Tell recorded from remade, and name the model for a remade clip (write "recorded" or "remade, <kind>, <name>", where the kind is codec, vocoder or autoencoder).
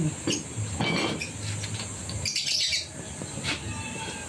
recorded